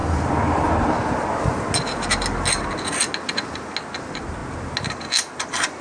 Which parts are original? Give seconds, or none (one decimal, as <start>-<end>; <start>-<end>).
0.0-5.8